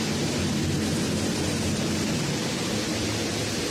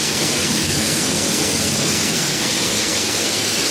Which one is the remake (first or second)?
second